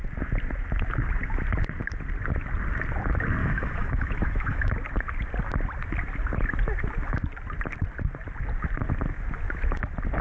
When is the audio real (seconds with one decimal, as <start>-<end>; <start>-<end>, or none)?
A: 0.0-3.4; 4.7-10.2